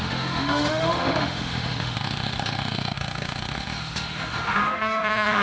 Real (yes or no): no